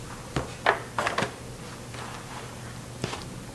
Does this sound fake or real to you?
real